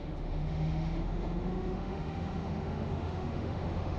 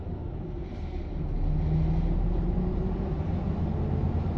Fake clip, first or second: first